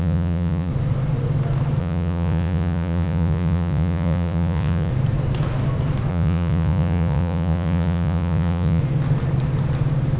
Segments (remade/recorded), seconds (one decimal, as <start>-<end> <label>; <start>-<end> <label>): 0.0-0.7 remade; 0.7-1.8 recorded; 1.8-4.9 remade; 4.9-6.1 recorded; 6.1-8.8 remade; 8.8-10.2 recorded